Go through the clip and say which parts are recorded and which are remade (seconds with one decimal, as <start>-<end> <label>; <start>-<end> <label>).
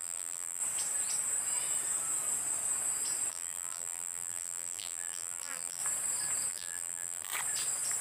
0.0-0.6 remade; 0.6-3.3 recorded; 3.3-5.8 remade; 5.8-6.5 recorded; 6.5-7.3 remade; 7.3-8.0 recorded